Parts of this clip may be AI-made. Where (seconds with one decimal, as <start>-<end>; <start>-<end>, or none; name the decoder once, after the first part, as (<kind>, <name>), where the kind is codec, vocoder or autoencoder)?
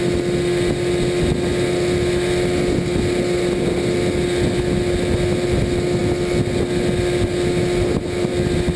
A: none